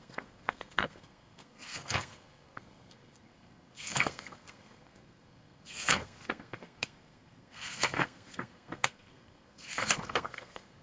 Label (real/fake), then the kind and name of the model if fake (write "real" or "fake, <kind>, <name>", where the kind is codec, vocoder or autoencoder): fake, codec, SNAC